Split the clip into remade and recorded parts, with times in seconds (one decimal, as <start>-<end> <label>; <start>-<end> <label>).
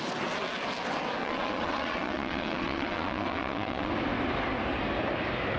0.0-1.2 recorded; 1.2-3.9 remade; 3.9-5.6 recorded